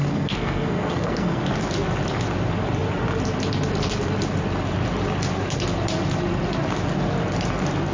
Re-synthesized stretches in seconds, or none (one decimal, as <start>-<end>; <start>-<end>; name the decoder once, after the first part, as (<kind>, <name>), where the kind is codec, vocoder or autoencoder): 0.0-1.4 (codec, SNAC)